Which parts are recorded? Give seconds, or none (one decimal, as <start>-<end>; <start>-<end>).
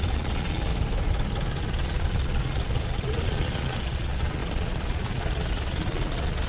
0.7-1.6